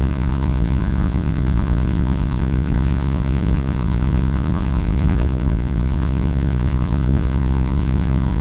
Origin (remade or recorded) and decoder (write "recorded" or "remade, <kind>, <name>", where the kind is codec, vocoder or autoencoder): remade, vocoder, Vocos